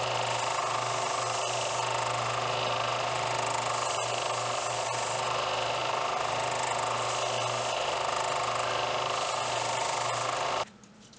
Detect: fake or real real